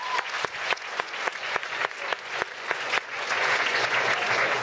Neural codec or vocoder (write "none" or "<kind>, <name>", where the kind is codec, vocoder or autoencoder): vocoder, Vocos